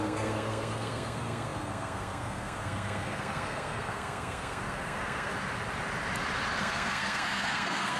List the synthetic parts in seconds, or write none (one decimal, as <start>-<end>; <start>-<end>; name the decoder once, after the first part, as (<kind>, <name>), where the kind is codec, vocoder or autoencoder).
0.0-5.3 (codec, SNAC); 6.6-8.0